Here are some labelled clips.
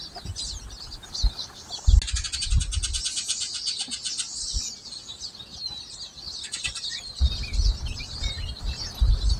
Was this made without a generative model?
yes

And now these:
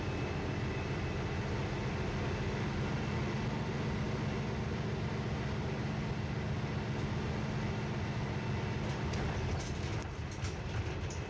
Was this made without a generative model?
yes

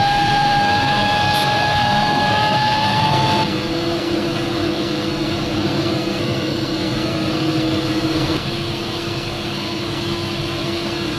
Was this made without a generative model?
no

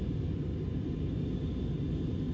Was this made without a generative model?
yes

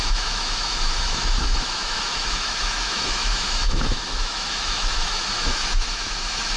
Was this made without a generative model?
no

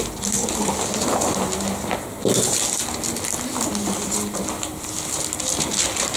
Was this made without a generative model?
yes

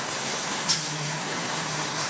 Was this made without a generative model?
no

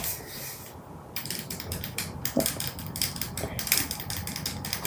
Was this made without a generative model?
yes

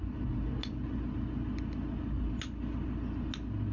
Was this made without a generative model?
yes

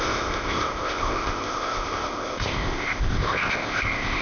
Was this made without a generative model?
no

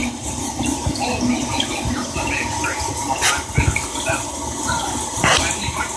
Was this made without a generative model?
yes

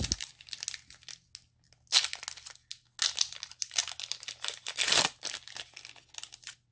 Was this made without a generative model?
yes